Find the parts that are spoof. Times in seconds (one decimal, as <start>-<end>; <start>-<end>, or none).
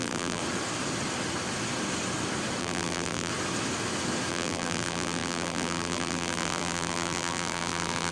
0.0-0.4; 2.6-3.3; 4.3-8.1